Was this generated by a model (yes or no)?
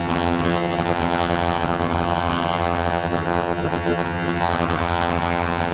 yes